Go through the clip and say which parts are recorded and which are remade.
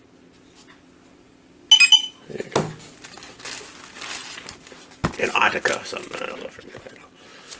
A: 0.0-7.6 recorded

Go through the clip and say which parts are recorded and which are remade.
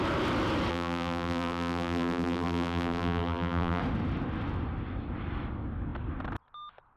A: 0.0-0.7 recorded; 0.7-3.8 remade; 3.8-7.0 recorded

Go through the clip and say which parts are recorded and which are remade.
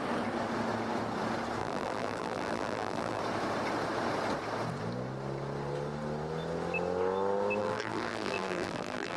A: 0.0-1.6 recorded; 1.6-3.2 remade; 3.2-7.6 recorded; 7.6-9.2 remade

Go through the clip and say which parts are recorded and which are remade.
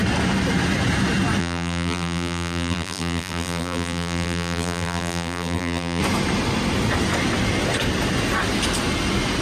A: 0.0-1.4 recorded; 1.4-6.0 remade; 6.0-9.4 recorded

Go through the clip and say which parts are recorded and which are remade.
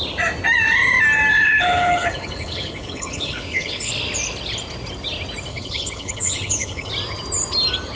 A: 0.0-1.3 recorded; 1.3-3.9 remade; 3.9-5.5 recorded; 5.5-6.9 remade; 6.9-8.0 recorded